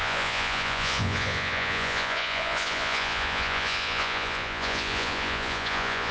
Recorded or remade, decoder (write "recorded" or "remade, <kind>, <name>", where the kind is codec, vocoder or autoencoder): remade, vocoder, Vocos